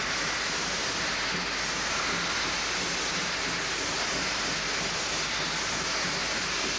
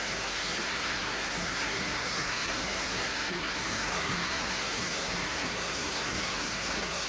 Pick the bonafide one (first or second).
first